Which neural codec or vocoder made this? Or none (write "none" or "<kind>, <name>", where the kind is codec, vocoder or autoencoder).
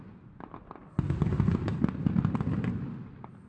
none